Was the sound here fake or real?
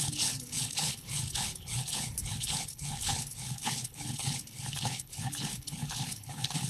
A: fake